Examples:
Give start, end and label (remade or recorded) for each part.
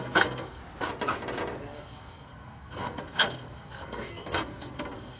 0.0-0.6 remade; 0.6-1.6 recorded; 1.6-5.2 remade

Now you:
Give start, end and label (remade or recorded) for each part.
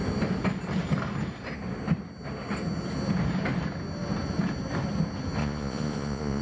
0.0-5.4 recorded; 5.4-6.4 remade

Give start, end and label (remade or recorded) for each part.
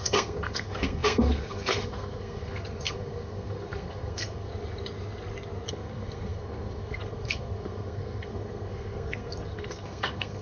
0.0-4.5 remade; 4.5-5.7 recorded; 5.7-10.4 remade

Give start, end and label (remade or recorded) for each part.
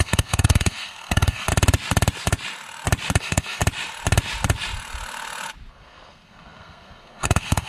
0.0-1.5 remade; 1.5-3.2 recorded; 3.2-3.6 remade; 3.6-5.7 recorded; 5.7-7.7 remade